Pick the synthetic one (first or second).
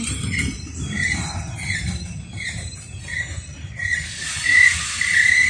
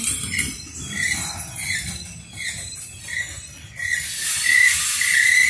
first